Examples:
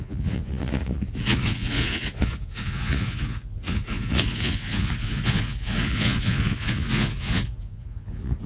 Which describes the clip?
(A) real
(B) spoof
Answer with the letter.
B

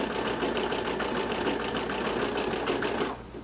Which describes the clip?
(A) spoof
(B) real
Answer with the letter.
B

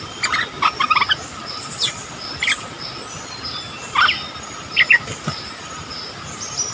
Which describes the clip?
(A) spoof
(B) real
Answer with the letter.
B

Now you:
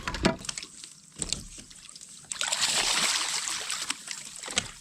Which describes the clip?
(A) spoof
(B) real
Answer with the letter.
B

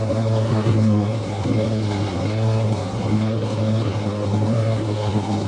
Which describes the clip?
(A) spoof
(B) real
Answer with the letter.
A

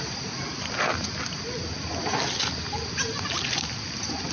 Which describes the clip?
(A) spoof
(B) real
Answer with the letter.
B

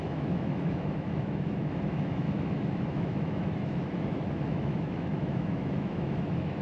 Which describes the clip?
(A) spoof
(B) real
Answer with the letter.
A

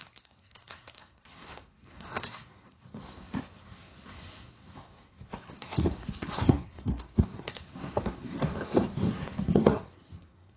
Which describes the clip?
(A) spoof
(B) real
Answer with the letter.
A